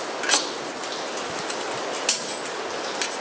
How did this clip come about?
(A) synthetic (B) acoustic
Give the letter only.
B